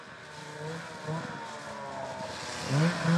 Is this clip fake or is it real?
real